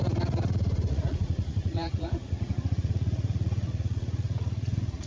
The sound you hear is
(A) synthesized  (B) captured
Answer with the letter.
A